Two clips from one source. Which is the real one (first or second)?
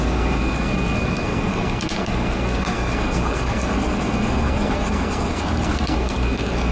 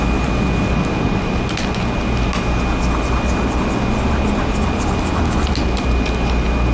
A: second